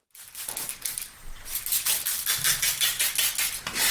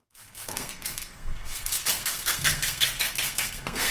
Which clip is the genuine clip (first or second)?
first